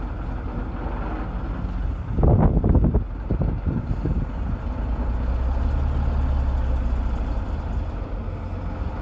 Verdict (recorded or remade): recorded